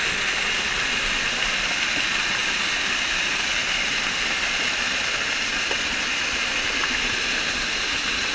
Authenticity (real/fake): real